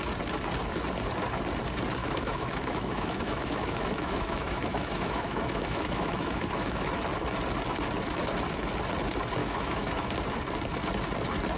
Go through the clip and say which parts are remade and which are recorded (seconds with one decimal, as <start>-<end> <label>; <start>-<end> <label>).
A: 0.0-2.0 recorded; 2.0-6.9 remade; 6.9-9.4 recorded; 9.4-10.1 remade; 10.1-11.6 recorded